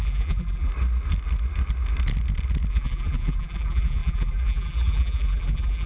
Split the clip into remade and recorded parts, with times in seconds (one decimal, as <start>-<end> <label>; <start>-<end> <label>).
0.0-0.7 remade; 0.7-2.7 recorded; 2.7-5.9 remade